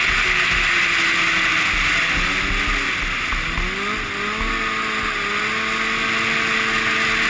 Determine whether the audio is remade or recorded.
recorded